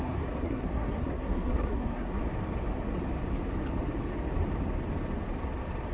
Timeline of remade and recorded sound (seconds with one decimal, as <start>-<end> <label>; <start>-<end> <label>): 0.0-2.2 remade; 2.2-5.9 recorded